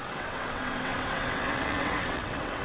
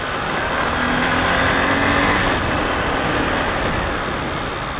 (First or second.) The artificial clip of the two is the first